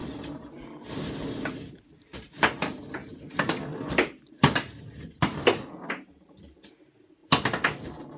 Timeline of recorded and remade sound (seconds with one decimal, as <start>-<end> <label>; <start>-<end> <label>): 0.0-0.6 remade; 0.6-8.2 recorded